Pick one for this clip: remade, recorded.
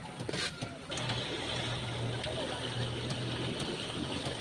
recorded